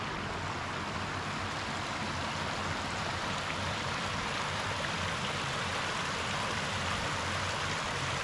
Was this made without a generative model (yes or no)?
yes